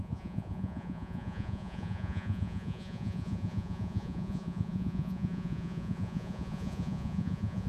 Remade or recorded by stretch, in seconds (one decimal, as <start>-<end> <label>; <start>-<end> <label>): 0.0-7.7 remade